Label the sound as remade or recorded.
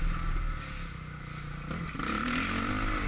recorded